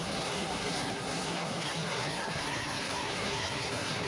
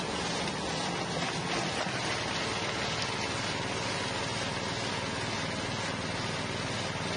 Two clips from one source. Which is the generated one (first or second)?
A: first